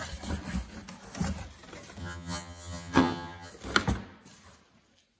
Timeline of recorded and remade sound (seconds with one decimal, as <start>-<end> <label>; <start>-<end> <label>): 0.0-2.0 recorded; 2.0-3.5 remade; 3.5-5.2 recorded